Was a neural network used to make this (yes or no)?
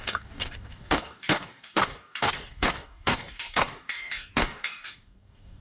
yes